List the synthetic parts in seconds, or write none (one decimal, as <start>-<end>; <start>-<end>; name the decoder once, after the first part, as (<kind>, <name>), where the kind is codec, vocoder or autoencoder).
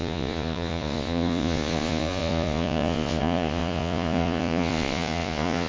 0.0-5.7 (vocoder, Vocos)